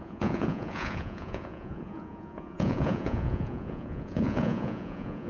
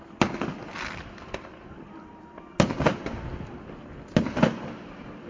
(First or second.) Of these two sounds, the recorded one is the second